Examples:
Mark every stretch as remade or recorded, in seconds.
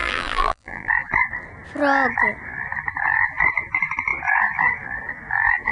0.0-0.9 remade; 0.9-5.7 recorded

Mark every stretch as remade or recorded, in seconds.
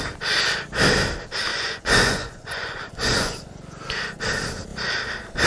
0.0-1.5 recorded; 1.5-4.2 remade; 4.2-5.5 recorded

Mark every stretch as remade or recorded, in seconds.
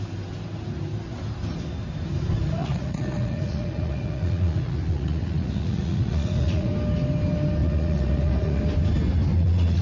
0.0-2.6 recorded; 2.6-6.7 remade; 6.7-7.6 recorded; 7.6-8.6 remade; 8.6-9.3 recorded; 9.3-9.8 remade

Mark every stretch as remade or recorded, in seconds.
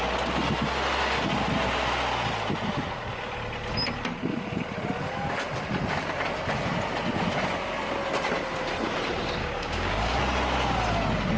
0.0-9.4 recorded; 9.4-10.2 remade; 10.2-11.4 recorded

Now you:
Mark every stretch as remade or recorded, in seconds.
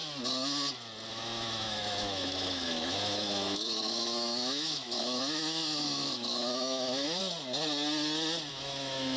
0.0-1.1 recorded; 1.1-7.2 remade; 7.2-8.5 recorded; 8.5-9.2 remade